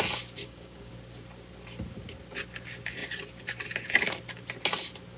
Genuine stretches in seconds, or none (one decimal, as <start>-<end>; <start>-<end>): 0.0-0.4; 0.9-5.2